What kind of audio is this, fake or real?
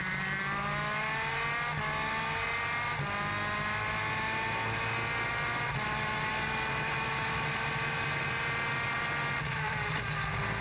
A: real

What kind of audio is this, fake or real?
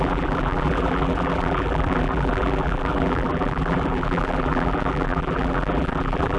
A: fake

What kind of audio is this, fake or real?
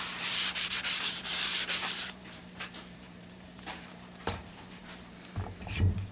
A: fake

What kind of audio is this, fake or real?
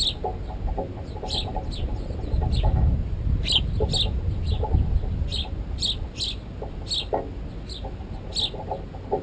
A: real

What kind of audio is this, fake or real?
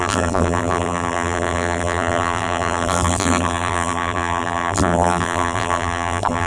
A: fake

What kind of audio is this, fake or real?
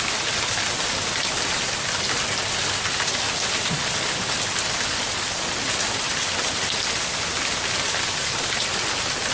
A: real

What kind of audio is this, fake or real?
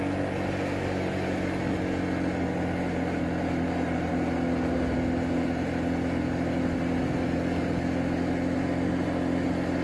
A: real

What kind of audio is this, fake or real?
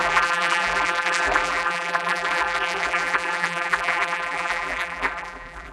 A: fake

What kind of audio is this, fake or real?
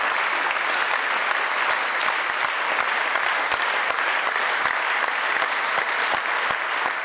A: real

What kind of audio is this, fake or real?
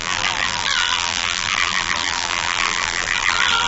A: fake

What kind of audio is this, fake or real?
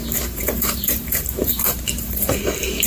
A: fake